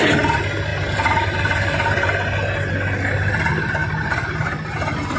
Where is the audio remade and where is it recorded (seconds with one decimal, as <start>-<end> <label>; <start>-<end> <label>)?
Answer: 0.0-5.2 recorded